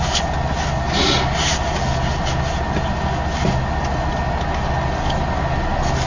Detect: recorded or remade recorded